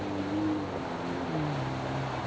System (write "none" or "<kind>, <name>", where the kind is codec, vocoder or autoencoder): none